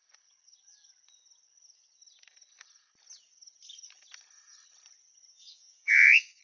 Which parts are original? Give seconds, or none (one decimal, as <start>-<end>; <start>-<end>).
0.0-5.3